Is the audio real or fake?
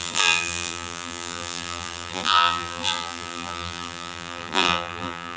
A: fake